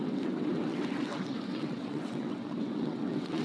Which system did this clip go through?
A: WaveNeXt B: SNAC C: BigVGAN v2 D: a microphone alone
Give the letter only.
A